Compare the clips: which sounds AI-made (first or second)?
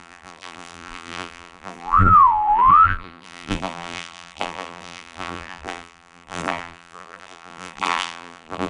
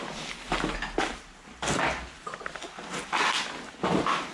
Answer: first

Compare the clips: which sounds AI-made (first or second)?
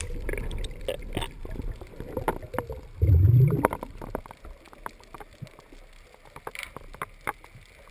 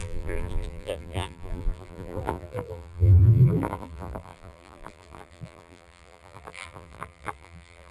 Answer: second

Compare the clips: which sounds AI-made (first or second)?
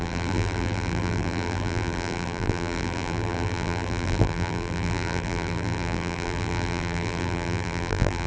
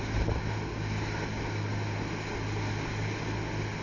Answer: first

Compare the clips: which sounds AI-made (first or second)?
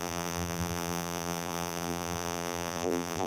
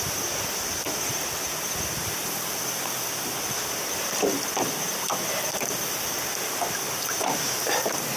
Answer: first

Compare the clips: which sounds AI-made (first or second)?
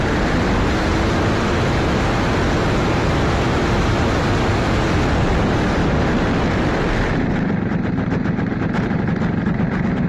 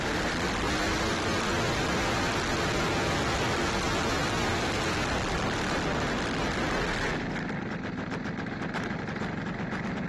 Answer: first